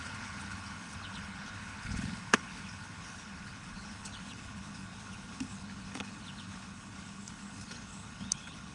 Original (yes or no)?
no